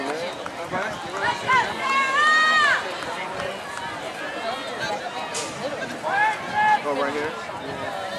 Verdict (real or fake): real